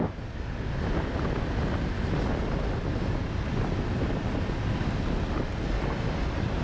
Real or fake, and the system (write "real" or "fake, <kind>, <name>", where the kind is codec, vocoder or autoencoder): real